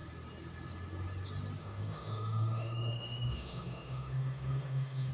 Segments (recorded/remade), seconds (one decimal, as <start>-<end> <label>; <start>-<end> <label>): 0.0-1.6 recorded; 1.6-5.1 remade